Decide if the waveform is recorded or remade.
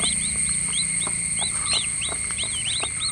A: recorded